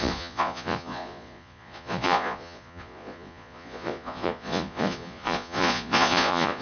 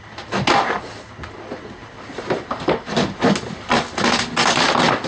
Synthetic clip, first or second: first